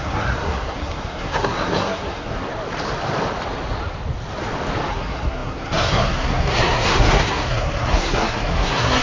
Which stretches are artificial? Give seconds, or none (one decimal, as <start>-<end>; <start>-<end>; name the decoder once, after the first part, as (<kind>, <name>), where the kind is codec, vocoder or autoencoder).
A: 0.0-2.5 (codec, SNAC); 4.9-9.0

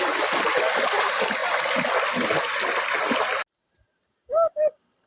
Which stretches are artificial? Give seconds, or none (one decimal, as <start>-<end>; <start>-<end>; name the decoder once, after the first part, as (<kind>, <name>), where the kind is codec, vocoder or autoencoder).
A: none